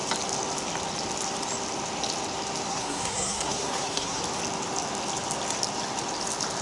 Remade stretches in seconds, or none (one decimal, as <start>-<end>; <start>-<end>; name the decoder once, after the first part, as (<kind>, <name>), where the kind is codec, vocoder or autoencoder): 2.7-4.2 (codec, SNAC)